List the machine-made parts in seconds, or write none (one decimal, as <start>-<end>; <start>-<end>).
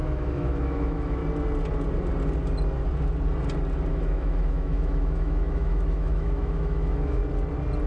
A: 0.0-1.2; 3.9-7.2